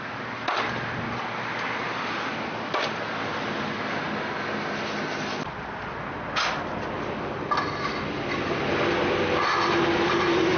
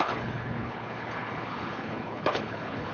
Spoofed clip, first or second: second